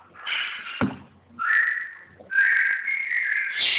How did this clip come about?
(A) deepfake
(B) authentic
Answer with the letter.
B